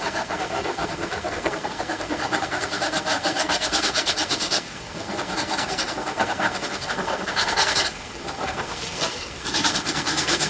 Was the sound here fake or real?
fake